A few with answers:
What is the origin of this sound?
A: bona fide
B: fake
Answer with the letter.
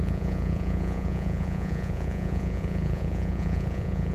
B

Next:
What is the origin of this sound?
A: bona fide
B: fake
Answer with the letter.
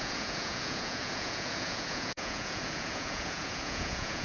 B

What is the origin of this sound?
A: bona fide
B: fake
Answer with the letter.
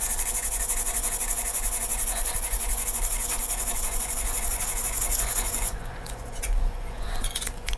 B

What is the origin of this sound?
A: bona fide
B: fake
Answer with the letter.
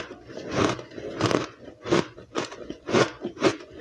B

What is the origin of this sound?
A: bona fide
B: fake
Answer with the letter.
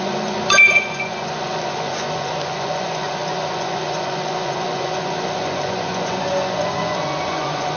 B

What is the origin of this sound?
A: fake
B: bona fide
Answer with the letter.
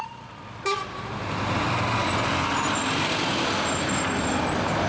B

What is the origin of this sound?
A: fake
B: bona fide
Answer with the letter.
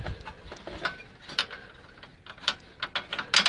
B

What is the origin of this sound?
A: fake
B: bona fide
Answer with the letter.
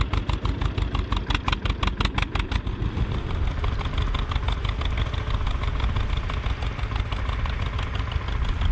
B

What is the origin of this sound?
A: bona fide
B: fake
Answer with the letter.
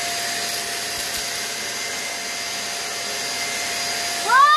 A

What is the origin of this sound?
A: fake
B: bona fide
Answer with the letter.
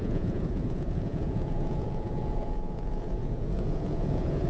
A